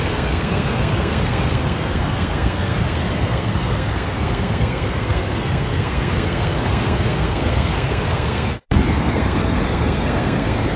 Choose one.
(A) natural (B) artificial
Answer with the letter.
B